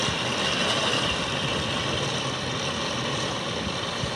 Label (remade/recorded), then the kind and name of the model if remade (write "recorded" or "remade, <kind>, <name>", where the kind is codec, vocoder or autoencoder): recorded